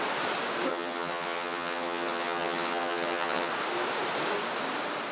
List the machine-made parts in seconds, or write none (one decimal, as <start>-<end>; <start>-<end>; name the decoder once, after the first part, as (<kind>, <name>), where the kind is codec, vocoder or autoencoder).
0.7-3.5 (vocoder, HiFi-GAN)